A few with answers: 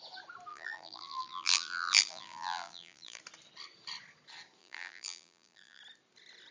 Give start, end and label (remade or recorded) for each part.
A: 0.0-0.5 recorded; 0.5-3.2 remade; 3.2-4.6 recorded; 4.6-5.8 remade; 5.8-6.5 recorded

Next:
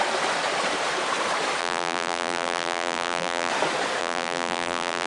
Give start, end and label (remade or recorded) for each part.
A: 0.0-1.6 recorded; 1.6-3.5 remade; 3.5-4.0 recorded; 4.0-5.1 remade

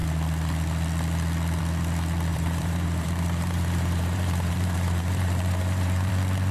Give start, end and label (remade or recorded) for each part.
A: 0.0-2.3 recorded; 2.3-6.1 remade; 6.1-6.5 recorded

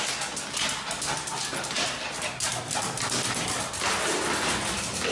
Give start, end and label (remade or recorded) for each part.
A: 0.0-2.5 recorded; 2.5-3.7 remade; 3.7-5.1 recorded

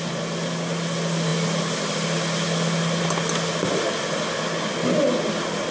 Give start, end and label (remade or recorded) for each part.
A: 0.0-5.7 recorded

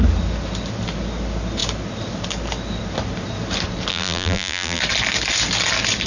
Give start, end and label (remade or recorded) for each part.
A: 0.0-3.9 recorded; 3.9-4.8 remade; 4.8-6.1 recorded

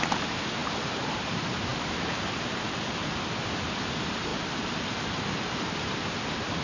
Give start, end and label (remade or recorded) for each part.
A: 0.0-6.6 remade

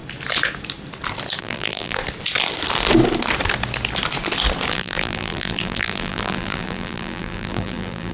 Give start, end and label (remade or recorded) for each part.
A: 0.0-1.4 recorded; 1.4-2.0 remade; 2.0-4.7 recorded; 4.7-8.1 remade